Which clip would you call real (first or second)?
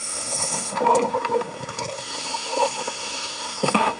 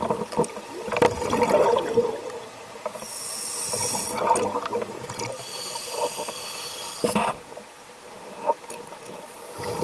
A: second